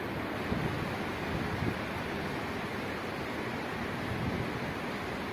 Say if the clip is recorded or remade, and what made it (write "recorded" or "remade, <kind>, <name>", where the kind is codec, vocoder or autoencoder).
recorded